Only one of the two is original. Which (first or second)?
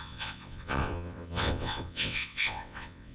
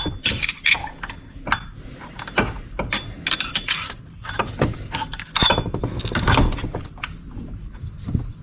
second